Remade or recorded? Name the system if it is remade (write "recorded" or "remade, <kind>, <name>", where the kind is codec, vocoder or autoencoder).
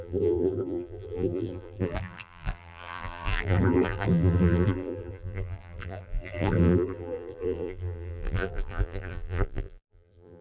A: remade, vocoder, BigVGAN v2